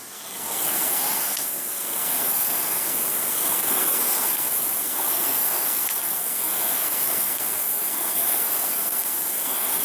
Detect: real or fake fake